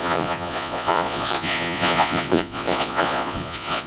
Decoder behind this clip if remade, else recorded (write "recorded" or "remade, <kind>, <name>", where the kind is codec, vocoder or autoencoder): remade, vocoder, Vocos